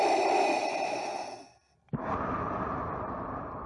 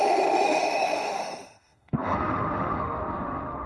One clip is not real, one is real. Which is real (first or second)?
first